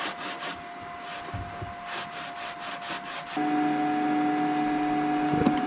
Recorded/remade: recorded